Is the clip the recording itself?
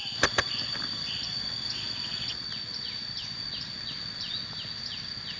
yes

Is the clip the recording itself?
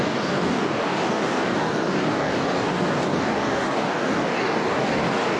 no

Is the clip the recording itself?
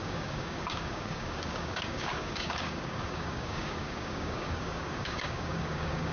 no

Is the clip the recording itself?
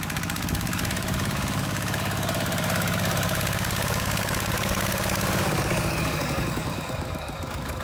no